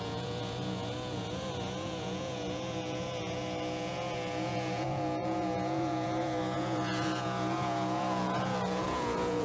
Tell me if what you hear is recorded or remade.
remade